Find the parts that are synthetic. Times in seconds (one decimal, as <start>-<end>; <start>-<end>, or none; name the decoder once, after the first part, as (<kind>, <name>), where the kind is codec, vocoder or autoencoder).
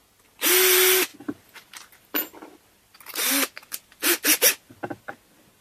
none